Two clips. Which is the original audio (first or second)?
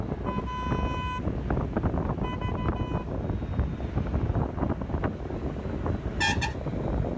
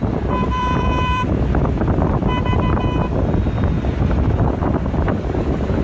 first